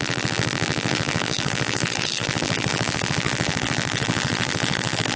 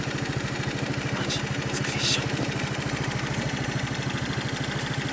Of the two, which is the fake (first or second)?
first